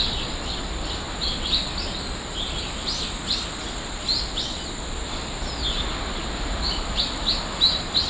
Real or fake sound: real